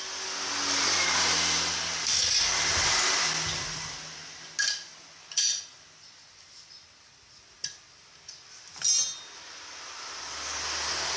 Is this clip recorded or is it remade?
recorded